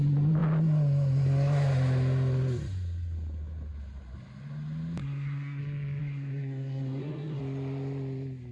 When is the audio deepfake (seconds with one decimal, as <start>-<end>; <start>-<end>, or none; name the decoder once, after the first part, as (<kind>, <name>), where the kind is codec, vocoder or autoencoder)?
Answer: 5.0-5.6 (codec, SNAC); 6.0-7.4